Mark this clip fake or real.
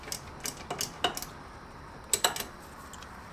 real